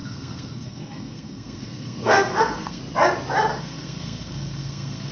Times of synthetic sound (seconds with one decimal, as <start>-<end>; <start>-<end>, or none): 0.0-2.8; 3.5-5.1